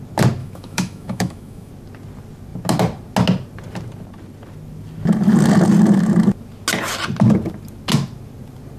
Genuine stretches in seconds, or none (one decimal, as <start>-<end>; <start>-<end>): 0.0-0.4; 1.7-8.8